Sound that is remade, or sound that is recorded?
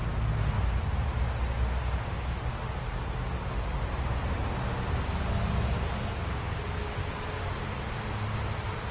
recorded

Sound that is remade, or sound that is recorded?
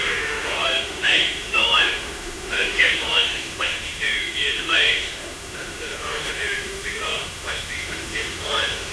remade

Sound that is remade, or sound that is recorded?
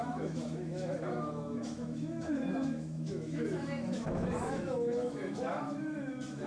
remade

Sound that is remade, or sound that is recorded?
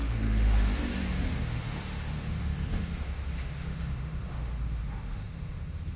remade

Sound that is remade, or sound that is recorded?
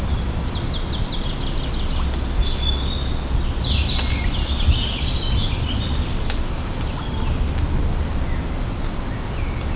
recorded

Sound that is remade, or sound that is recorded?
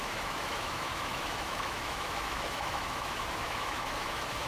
remade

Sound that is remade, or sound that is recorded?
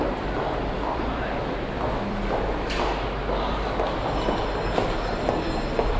recorded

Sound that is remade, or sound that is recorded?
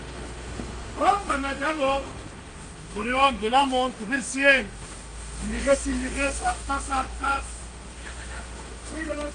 remade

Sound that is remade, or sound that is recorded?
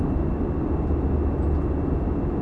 recorded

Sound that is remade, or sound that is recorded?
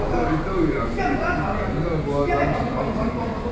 recorded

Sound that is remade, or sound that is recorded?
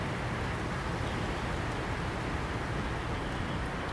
recorded